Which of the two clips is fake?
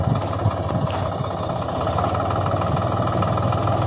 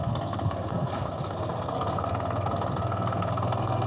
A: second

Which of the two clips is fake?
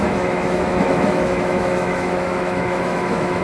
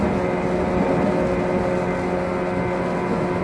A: first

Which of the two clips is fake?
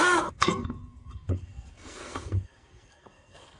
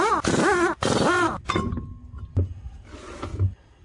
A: first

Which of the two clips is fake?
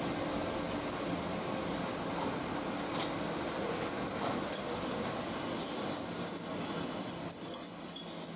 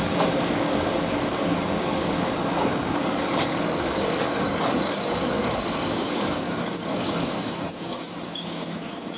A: second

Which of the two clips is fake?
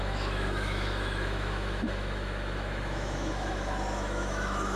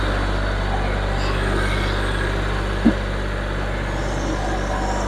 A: first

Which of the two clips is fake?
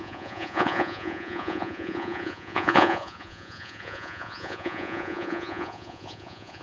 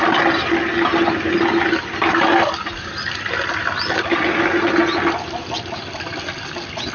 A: first